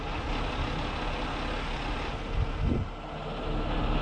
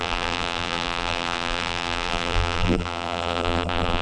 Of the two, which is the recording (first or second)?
first